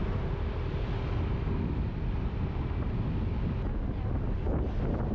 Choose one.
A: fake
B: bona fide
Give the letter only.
B